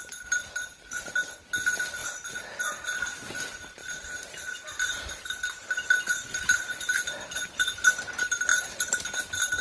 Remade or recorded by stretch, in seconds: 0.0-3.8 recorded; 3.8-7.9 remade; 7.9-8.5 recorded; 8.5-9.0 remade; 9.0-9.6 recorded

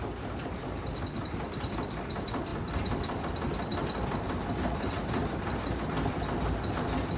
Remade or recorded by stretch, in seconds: 0.0-7.2 recorded

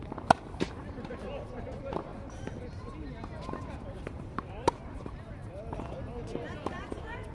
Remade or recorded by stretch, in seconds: 0.0-2.1 remade; 2.1-3.9 recorded; 3.9-5.4 remade; 5.4-6.8 recorded; 6.8-7.3 remade